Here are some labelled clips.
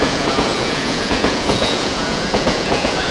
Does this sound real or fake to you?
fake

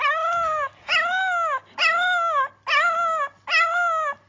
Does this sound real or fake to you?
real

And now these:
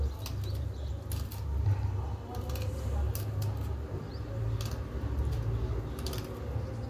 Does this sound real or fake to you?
real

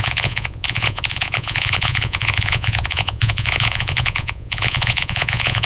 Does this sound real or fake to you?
fake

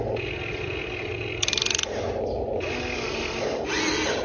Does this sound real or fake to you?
real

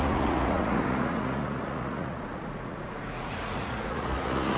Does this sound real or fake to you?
fake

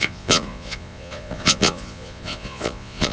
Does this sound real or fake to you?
fake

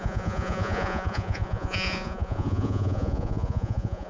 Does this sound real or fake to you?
fake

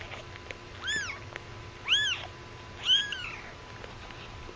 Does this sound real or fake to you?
real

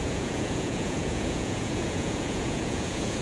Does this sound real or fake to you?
fake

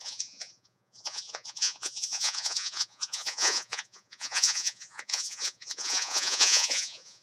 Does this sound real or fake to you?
fake